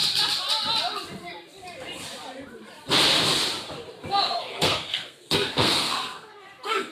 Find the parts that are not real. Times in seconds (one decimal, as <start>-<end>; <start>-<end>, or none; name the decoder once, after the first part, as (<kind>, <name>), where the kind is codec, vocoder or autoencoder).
4.1-6.9 (codec, SNAC)